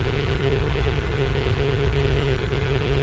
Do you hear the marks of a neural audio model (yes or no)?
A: yes